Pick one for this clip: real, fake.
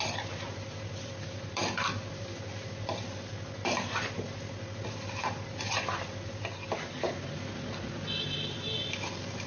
real